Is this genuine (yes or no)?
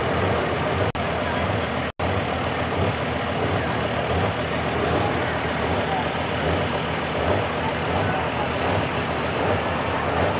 yes